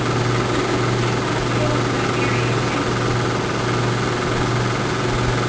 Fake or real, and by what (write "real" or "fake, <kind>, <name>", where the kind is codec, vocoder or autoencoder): real